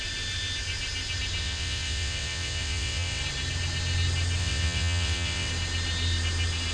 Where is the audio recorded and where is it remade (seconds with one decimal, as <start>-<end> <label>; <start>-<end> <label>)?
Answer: 0.0-1.4 recorded; 1.4-3.2 remade; 3.2-4.4 recorded; 4.4-5.5 remade; 5.5-6.7 recorded